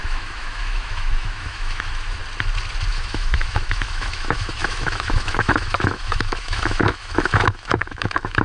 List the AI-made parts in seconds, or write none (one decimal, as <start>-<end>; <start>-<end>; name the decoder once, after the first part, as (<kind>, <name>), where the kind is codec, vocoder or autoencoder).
0.0-2.2 (autoencoder, DAC-VAE); 2.9-8.4